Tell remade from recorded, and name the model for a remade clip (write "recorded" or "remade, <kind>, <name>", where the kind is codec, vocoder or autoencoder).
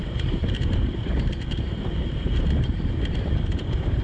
remade, vocoder, BigVGAN v2